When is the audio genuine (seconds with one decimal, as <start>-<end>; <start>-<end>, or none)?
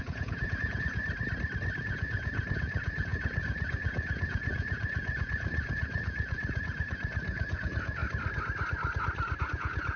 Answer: 1.0-1.8; 8.0-9.4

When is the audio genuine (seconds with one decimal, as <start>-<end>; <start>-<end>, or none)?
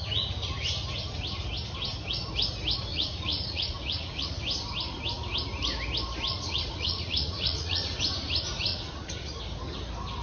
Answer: 0.0-2.9; 4.4-6.3; 8.0-8.7; 9.4-10.2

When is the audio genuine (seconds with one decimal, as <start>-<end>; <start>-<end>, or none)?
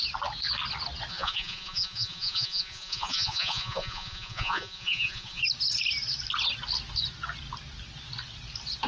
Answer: 0.0-1.1; 5.4-8.9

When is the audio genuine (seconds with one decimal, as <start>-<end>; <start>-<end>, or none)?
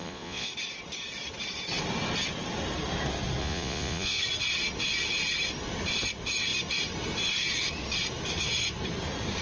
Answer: 0.5-3.4; 4.2-9.4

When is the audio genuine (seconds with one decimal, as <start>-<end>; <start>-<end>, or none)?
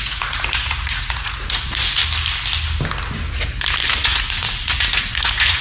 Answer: 2.0-3.9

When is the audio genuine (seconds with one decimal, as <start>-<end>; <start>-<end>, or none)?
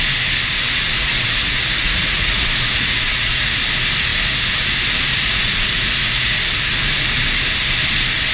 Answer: 0.0-0.9; 3.5-5.1; 6.4-8.3